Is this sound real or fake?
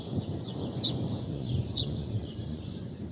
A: fake